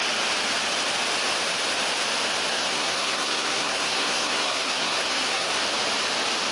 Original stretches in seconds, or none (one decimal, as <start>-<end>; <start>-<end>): 0.0-2.5; 5.6-6.5